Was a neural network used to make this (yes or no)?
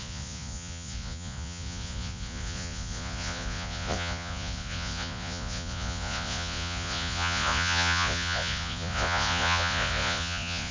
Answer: yes